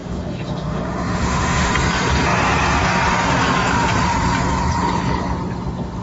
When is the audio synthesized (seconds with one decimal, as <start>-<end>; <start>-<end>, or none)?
0.0-1.7

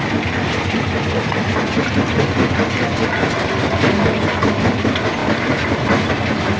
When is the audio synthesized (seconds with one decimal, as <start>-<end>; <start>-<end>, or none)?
none

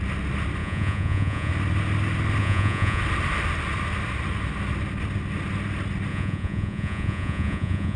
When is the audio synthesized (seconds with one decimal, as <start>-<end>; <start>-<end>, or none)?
0.6-1.5; 2.4-3.0; 6.1-8.0

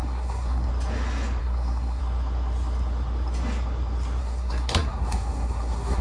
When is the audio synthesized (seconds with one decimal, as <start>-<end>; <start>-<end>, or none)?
0.0-0.7; 1.4-2.0; 4.2-6.0

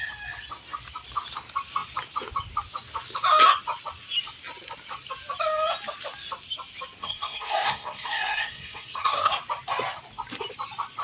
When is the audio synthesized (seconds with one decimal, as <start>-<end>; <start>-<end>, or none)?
7.0-9.3